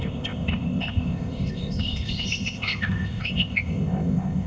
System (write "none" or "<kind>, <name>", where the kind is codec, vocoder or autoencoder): codec, ZipCodec